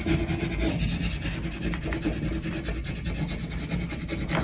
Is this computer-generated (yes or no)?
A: no